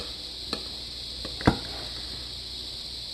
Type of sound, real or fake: real